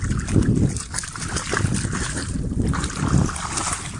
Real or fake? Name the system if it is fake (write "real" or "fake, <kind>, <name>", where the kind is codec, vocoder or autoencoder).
real